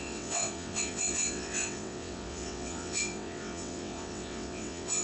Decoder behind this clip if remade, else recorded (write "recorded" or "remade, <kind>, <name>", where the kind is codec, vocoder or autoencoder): remade, vocoder, WaveNeXt